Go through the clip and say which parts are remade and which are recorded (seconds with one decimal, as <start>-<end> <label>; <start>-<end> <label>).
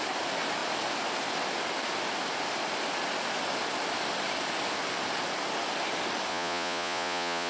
0.0-6.3 recorded; 6.3-7.5 remade